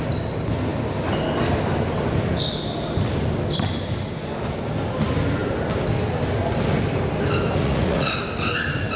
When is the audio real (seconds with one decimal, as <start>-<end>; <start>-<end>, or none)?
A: 0.0-7.6; 8.1-9.0